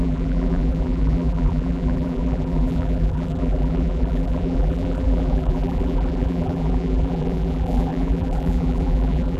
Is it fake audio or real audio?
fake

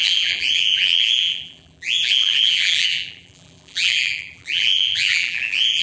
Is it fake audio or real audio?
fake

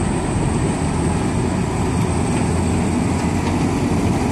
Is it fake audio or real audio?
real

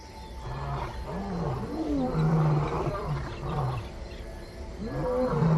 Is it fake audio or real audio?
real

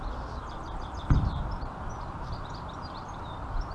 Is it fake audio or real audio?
fake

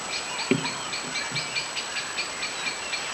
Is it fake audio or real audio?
real